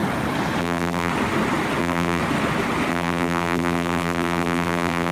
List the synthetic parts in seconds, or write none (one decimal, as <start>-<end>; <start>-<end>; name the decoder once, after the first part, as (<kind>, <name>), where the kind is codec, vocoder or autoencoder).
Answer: 0.6-1.1 (vocoder, BigVGAN v2); 1.8-2.2; 2.9-5.1